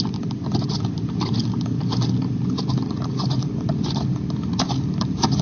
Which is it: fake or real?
real